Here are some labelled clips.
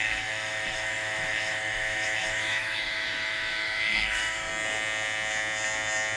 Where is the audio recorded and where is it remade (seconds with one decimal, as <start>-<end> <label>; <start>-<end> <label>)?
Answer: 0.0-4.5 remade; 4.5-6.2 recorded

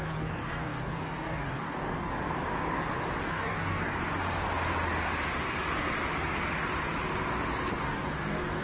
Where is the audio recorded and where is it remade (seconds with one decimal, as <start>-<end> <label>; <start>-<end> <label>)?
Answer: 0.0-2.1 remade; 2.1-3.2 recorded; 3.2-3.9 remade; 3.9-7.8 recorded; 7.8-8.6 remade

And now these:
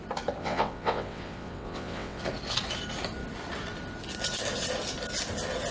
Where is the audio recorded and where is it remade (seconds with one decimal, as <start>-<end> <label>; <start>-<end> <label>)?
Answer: 0.0-0.4 recorded; 0.4-2.2 remade; 2.2-5.7 recorded

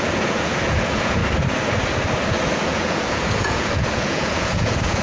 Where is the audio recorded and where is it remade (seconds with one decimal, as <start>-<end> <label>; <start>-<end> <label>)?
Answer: 0.0-1.2 remade; 1.2-2.3 recorded; 2.3-5.0 remade

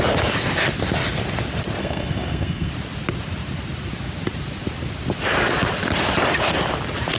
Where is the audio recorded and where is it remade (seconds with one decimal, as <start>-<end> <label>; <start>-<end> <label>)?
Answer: 0.0-1.8 recorded; 1.8-2.7 remade; 2.7-7.2 recorded

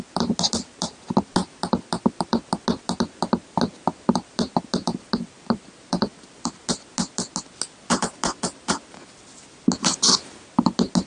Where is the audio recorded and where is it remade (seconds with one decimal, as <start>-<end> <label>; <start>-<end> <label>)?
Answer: 0.0-11.1 recorded

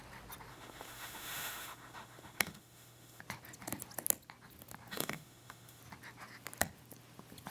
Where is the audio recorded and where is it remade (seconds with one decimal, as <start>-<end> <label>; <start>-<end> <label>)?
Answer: 0.0-0.5 recorded; 0.5-3.2 remade; 3.2-4.9 recorded; 4.9-5.8 remade; 5.8-7.5 recorded

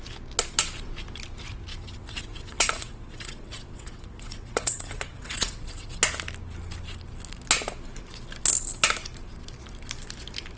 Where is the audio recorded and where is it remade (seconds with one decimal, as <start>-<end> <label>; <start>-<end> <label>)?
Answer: 0.0-1.7 recorded; 1.7-6.0 remade; 6.0-10.6 recorded